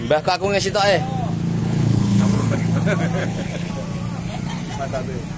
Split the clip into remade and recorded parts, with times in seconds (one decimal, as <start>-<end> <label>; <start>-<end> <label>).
0.0-1.6 recorded; 1.6-2.8 remade; 2.8-3.2 recorded; 3.2-3.7 remade; 3.7-5.4 recorded